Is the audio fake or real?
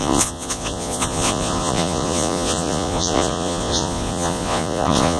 fake